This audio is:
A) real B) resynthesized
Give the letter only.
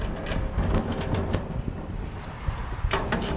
A